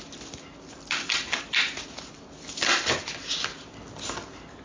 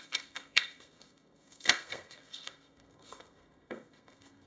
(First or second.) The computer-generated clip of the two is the second